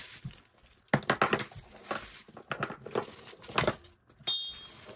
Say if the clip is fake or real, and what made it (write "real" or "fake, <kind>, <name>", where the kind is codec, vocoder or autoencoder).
real